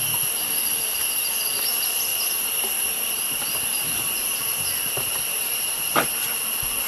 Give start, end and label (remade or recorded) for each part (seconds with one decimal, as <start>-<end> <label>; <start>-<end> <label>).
0.0-6.9 recorded